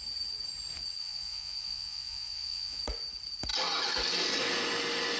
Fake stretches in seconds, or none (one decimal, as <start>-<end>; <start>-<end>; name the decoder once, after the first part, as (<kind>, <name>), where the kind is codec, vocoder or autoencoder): 1.0-2.8 (vocoder, Vocos)

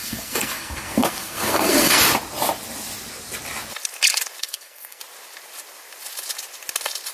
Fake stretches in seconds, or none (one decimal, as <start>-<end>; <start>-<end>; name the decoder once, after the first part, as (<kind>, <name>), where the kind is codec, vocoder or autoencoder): 0.0-2.0 (codec, SNAC); 4.4-5.0

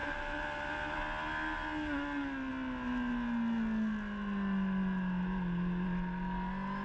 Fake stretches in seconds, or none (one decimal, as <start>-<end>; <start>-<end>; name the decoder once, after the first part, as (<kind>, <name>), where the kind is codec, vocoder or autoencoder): none